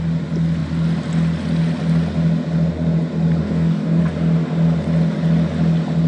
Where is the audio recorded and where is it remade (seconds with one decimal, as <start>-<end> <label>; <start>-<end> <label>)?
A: 0.0-3.4 recorded; 3.4-4.0 remade; 4.0-6.1 recorded